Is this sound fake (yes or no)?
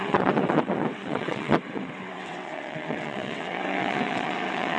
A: yes